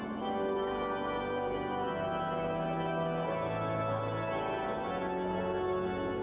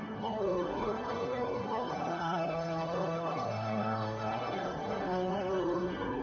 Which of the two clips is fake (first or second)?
second